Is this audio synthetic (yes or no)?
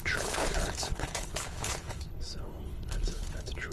yes